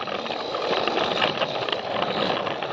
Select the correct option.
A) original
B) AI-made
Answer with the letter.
B